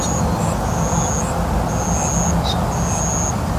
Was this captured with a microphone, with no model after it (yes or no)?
yes